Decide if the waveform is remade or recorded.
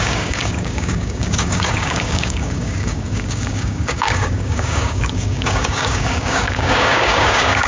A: remade